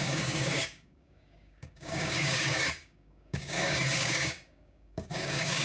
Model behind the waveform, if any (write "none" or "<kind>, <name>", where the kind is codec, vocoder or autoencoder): codec, DAC